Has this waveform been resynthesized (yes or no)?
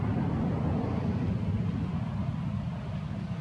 no